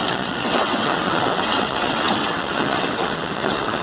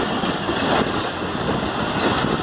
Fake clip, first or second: first